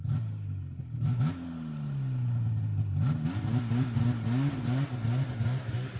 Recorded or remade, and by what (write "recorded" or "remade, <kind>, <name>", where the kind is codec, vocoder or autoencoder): recorded